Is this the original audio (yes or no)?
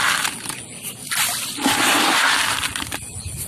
yes